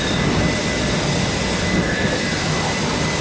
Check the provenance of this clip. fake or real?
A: real